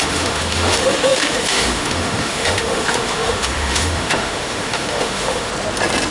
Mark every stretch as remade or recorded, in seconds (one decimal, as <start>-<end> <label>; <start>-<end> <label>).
0.0-5.5 remade; 5.5-6.1 recorded